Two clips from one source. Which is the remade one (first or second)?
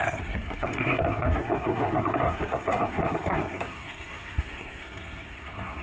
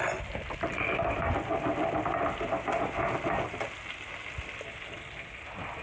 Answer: first